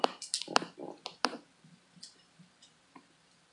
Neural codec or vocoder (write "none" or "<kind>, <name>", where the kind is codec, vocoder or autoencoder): none